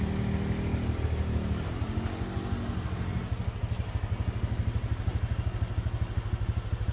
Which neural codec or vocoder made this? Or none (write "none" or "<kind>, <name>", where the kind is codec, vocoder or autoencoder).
none